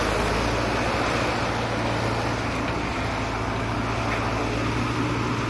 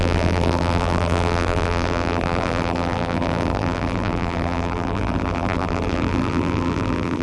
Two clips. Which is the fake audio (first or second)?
second